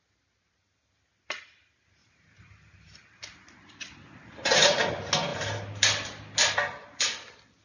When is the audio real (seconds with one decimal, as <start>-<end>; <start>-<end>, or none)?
0.0-2.0; 4.8-7.6